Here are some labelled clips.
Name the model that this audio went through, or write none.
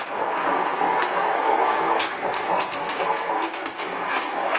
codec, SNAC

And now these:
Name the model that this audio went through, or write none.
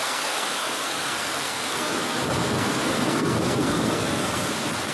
codec, SNAC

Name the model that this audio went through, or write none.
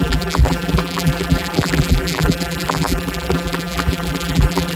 vocoder, BigVGAN v2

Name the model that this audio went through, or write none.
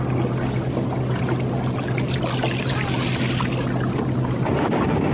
none